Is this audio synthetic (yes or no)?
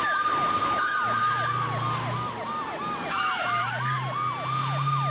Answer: no